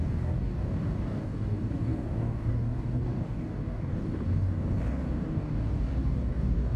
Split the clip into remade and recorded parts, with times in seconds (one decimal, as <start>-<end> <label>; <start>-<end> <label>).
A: 0.0-6.8 remade